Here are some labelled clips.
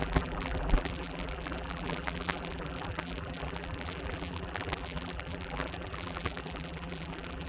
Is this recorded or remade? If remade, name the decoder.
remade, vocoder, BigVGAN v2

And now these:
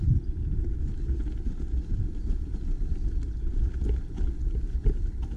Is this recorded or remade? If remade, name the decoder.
recorded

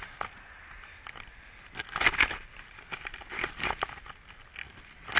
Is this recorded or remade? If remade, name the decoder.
recorded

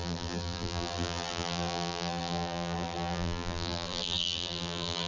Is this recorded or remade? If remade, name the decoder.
remade, vocoder, BigVGAN v2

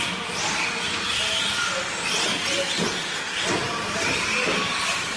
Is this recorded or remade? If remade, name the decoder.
recorded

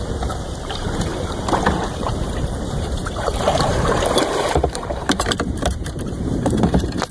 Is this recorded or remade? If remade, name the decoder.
remade, vocoder, BigVGAN v2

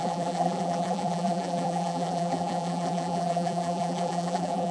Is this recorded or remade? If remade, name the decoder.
remade, vocoder, BigVGAN v2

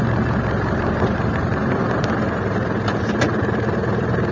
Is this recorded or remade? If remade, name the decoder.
remade, vocoder, BigVGAN v2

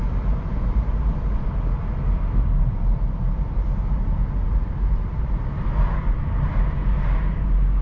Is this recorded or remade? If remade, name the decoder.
recorded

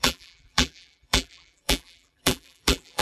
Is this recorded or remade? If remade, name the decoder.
remade, vocoder, BigVGAN v2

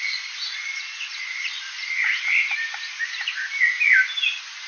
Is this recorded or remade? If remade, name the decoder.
recorded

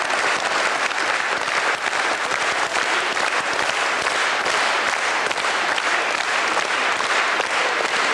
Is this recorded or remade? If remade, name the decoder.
recorded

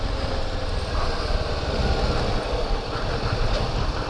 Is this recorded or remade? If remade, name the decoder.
recorded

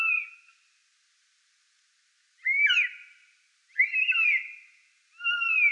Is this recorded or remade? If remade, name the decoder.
recorded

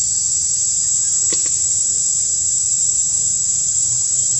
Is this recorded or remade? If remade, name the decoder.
remade, vocoder, BigVGAN v2